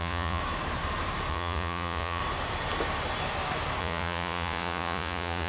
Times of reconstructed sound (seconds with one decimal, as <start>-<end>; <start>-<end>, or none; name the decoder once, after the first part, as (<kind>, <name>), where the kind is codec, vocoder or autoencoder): 0.0-0.4 (vocoder, Vocos); 1.3-2.2; 3.8-5.5